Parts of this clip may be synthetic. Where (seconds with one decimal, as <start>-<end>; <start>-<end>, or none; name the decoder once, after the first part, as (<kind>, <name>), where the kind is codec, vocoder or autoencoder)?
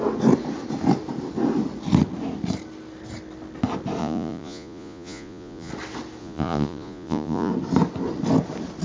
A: 4.0-5.7 (vocoder, Vocos); 6.2-7.5